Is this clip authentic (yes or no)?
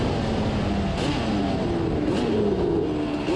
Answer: yes